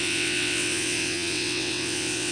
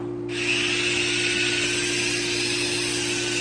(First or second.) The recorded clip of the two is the second